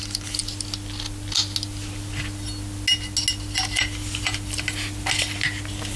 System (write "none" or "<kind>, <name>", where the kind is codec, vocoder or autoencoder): none